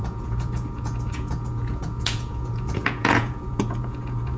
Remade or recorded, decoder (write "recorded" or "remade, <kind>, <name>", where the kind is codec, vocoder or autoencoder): remade, vocoder, Vocos